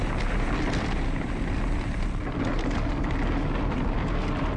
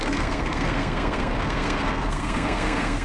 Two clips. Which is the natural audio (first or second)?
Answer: first